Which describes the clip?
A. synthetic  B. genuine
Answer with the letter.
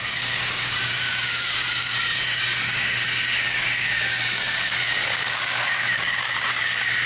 A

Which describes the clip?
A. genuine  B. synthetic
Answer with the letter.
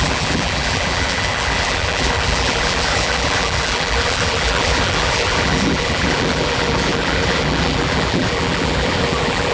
B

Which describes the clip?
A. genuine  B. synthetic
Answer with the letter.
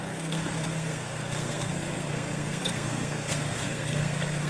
B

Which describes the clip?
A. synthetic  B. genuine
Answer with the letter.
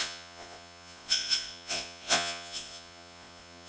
A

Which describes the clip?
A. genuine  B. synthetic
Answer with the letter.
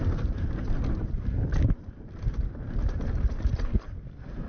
A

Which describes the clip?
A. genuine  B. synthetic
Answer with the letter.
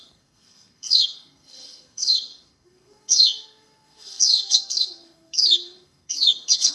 B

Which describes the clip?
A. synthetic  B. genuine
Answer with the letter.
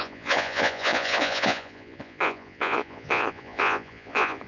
A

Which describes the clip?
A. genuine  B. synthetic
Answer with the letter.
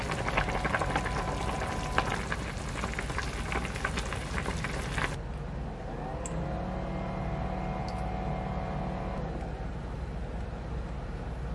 A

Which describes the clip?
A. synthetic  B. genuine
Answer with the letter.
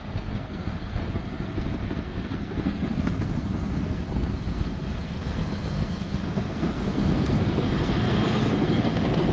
A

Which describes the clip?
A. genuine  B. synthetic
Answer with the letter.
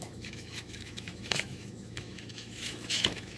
B